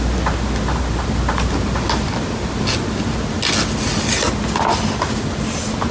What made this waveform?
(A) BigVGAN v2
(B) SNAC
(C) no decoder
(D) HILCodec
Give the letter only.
C